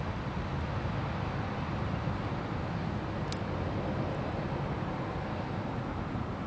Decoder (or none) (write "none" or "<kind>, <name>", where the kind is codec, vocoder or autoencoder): none